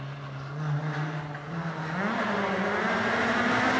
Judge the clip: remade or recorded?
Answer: recorded